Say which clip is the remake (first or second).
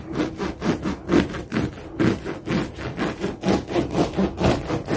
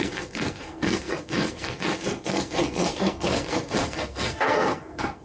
second